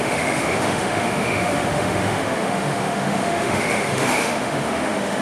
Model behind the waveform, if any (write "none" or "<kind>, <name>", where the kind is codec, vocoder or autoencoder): autoencoder, DAC-VAE